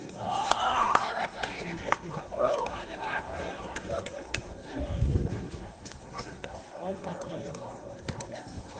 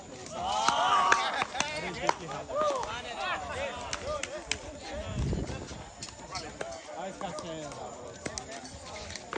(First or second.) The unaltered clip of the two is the second